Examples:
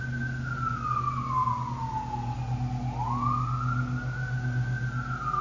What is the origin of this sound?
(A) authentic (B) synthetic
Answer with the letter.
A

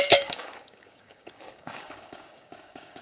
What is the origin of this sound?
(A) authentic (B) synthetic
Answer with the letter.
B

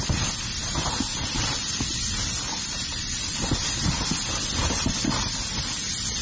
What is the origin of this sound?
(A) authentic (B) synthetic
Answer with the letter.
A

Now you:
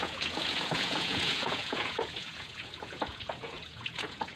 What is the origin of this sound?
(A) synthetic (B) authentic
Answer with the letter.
A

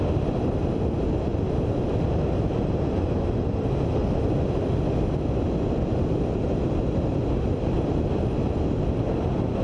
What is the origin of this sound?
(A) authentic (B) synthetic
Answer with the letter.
A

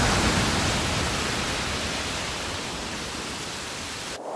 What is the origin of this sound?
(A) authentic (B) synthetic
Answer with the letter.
A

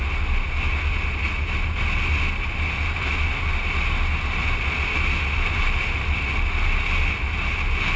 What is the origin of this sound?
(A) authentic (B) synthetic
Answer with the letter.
A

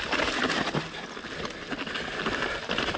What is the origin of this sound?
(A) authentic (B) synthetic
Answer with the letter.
A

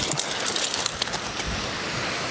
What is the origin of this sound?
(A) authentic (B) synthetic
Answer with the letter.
A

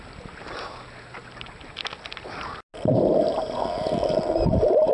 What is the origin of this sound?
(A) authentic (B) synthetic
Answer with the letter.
A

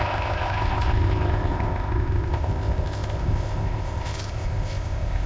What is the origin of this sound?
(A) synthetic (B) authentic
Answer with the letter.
A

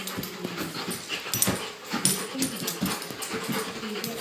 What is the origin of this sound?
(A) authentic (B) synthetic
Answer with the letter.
A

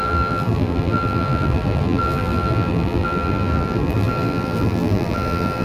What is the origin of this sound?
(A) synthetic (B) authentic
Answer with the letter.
A